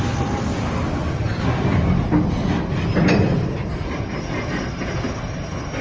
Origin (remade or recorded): recorded